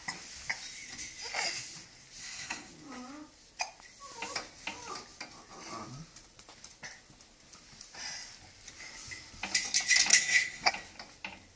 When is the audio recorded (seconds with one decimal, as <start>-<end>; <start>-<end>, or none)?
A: 0.0-2.2; 2.7-10.1; 10.7-11.6